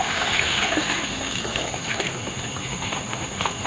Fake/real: fake